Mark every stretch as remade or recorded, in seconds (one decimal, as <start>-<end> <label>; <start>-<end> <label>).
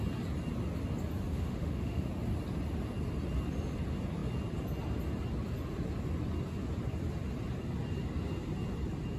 0.0-1.3 recorded; 1.3-2.1 remade; 2.1-9.2 recorded